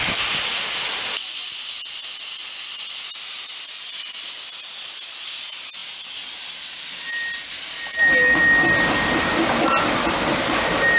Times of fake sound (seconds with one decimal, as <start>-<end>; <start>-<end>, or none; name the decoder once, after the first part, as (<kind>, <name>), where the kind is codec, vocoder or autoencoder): none